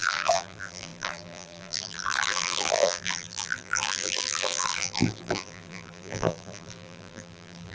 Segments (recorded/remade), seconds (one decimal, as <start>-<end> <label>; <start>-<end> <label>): 0.0-7.7 remade

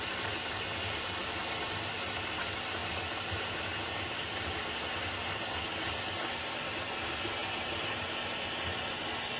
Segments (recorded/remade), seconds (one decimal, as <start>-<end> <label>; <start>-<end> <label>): 0.0-9.4 recorded

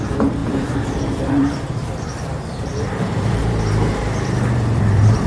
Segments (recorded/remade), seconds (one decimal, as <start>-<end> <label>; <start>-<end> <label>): 0.0-5.3 remade